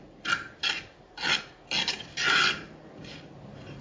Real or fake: real